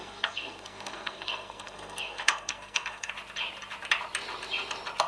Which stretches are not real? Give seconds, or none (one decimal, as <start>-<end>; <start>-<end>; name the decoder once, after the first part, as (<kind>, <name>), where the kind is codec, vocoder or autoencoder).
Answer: 0.0-3.1 (codec, SNAC)

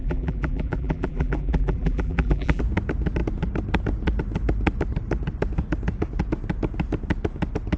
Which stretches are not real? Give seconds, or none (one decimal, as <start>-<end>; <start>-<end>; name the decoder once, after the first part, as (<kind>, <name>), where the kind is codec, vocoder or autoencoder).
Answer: 0.0-2.6 (vocoder, BigVGAN v2)

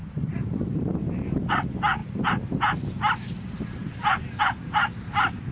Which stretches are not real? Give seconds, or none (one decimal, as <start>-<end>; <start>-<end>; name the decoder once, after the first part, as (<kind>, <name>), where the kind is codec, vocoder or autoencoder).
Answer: 0.0-2.0 (vocoder, BigVGAN v2); 3.4-5.5

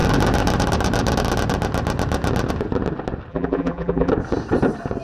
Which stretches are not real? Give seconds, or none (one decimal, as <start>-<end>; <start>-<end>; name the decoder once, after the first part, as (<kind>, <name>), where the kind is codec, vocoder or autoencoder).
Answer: 3.3-4.1 (vocoder, BigVGAN v2)

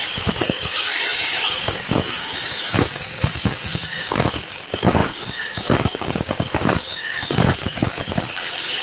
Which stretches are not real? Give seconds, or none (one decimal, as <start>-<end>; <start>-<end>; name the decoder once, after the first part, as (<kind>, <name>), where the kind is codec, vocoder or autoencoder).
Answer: 0.0-8.8 (codec, DAC)

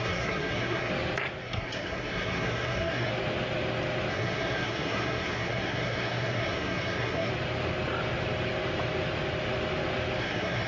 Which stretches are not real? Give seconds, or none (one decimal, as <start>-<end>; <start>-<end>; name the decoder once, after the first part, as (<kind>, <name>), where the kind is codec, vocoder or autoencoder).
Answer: 0.0-0.9 (codec, SNAC); 1.4-3.1; 4.1-7.3; 10.2-10.7